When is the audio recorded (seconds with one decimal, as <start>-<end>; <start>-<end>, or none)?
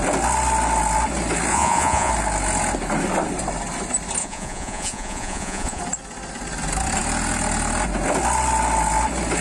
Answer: 0.0-1.5; 2.1-4.2; 5.8-9.4